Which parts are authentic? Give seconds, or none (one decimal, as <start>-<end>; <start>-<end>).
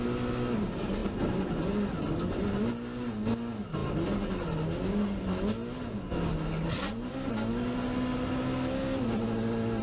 0.0-9.8